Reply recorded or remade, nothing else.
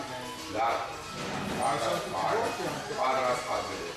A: recorded